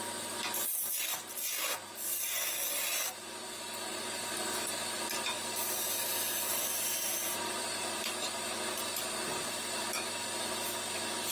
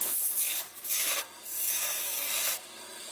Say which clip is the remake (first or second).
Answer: second